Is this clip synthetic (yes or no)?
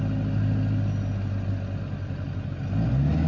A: no